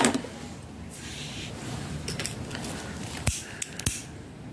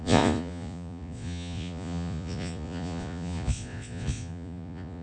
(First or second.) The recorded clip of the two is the first